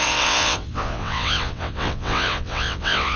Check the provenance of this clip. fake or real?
fake